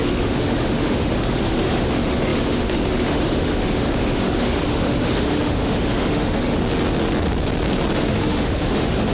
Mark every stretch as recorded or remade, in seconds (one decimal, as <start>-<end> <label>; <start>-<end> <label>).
0.0-6.6 remade; 6.6-8.0 recorded; 8.0-9.1 remade